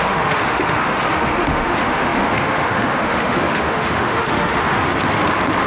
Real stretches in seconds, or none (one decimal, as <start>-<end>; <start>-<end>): 4.9-5.7